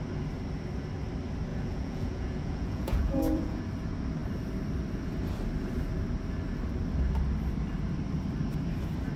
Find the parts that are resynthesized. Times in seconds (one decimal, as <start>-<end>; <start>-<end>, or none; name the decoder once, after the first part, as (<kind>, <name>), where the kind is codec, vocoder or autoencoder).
1.5-3.6 (vocoder, Vocos)